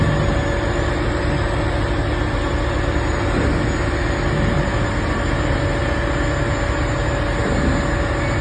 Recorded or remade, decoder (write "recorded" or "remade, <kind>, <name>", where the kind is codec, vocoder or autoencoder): recorded